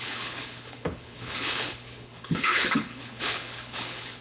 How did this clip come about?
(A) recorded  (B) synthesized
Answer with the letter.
B